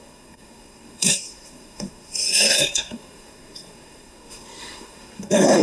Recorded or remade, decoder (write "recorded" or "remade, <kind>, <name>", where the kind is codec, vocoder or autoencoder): remade, codec, SNAC